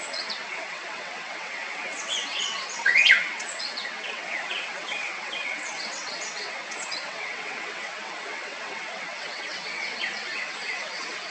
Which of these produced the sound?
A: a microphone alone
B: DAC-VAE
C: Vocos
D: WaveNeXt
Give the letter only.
D